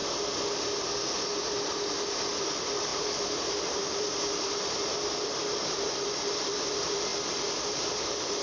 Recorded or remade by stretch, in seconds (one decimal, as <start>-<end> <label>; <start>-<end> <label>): 0.0-2.2 recorded; 2.2-7.1 remade; 7.1-7.6 recorded; 7.6-8.4 remade

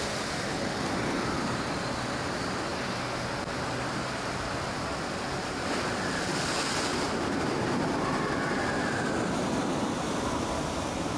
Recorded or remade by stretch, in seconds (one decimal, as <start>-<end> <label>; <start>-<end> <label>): 0.0-11.2 recorded